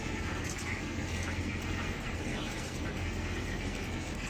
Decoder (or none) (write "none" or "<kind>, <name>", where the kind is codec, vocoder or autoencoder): codec, SNAC